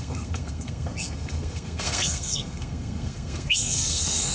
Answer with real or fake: fake